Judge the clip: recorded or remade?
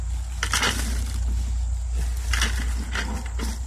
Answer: recorded